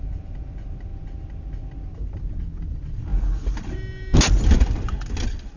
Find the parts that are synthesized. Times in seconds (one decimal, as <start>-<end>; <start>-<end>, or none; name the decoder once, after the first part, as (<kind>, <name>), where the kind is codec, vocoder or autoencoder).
none

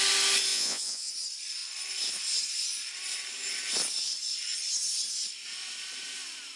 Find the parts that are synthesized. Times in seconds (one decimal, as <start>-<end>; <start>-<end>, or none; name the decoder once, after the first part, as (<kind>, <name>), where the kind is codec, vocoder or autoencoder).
0.5-1.1 (vocoder, Vocos)